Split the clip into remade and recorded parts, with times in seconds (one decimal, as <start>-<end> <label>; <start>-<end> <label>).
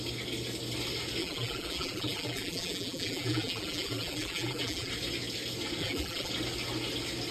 0.0-1.2 recorded; 1.2-4.9 remade; 4.9-5.8 recorded; 5.8-6.3 remade; 6.3-7.3 recorded